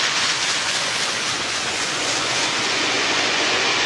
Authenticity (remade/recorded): remade